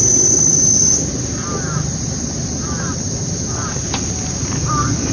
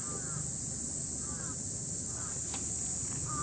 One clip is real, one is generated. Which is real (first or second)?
second